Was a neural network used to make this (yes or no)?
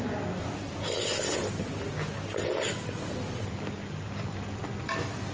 no